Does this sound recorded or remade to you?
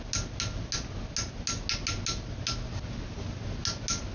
recorded